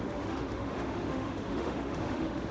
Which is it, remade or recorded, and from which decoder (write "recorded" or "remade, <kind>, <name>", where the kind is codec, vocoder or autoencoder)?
remade, autoencoder, DAC-VAE